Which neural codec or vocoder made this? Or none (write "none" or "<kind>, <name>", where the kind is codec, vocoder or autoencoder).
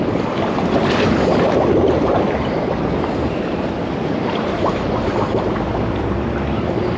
vocoder, BigVGAN v2